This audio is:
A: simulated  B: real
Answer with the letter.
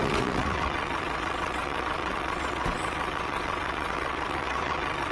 A